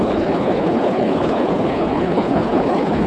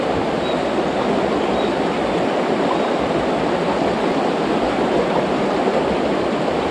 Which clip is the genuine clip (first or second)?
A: second